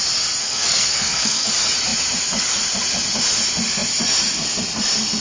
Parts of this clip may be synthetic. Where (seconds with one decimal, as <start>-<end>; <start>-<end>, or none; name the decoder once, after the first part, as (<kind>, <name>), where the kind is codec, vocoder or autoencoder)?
0.4-1.5 (codec, SNAC)